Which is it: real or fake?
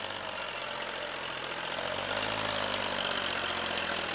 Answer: real